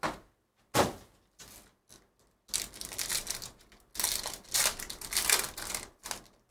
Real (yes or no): yes